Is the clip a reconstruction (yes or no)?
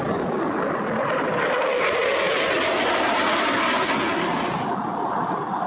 no